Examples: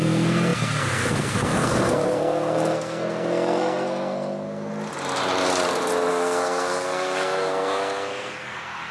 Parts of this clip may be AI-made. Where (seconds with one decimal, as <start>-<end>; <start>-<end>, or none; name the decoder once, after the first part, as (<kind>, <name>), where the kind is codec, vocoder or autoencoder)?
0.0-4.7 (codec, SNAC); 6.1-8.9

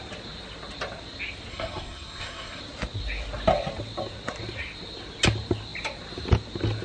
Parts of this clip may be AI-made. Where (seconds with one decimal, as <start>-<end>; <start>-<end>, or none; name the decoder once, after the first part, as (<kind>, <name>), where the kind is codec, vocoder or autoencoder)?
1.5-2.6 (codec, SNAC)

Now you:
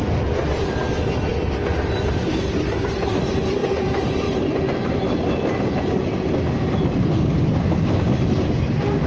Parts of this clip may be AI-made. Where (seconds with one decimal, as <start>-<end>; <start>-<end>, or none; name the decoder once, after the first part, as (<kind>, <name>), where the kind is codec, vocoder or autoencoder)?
none